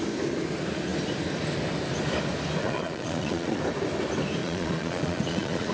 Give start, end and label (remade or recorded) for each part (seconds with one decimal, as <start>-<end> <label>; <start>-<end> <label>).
0.0-2.6 recorded; 2.6-3.6 remade; 3.6-4.4 recorded; 4.4-5.7 remade